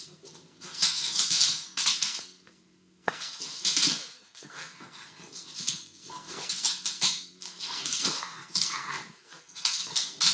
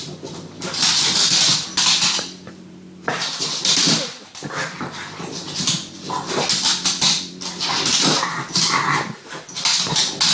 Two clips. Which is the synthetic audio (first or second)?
first